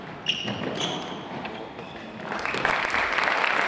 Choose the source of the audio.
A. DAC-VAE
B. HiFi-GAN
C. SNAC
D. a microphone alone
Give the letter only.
D